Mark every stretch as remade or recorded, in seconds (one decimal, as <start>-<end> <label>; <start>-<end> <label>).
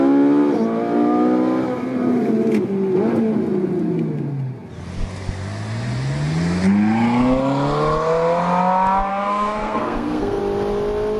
0.0-9.1 recorded; 9.1-10.4 remade; 10.4-11.2 recorded